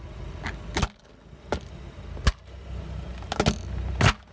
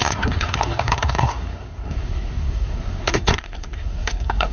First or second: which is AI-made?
second